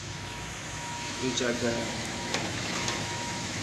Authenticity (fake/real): fake